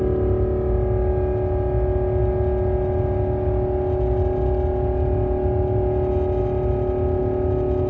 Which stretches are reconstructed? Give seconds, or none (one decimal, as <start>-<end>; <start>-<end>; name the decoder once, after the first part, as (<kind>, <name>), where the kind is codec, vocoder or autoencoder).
none